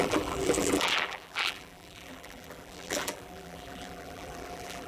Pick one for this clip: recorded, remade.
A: remade